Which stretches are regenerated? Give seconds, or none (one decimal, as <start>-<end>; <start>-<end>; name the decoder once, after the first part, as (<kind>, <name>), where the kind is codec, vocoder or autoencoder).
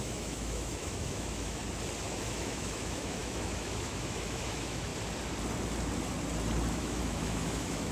0.0-1.6 (autoencoder, DAC-VAE); 2.2-4.9; 6.7-7.9